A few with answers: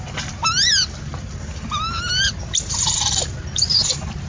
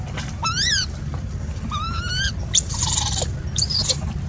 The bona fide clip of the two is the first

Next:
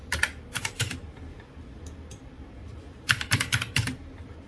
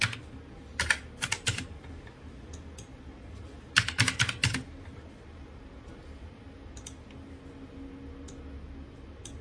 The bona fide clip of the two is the second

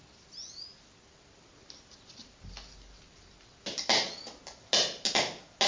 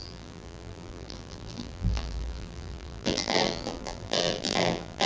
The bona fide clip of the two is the first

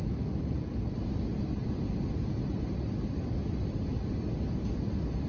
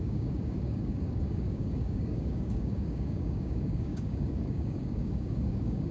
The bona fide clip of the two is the first